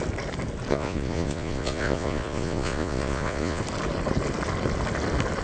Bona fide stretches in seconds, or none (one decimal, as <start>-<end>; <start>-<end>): 0.0-0.7; 3.6-5.4